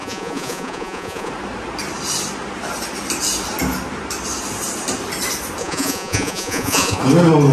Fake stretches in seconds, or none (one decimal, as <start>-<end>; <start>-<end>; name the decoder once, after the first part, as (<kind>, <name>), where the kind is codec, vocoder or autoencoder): 0.0-1.3 (vocoder, Vocos); 5.6-7.0